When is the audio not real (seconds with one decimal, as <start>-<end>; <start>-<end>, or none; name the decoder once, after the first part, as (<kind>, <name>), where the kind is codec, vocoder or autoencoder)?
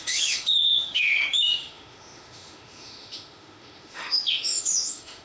0.0-5.2 (autoencoder, DAC-VAE)